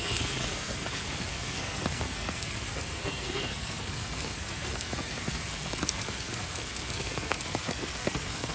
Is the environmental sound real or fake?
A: fake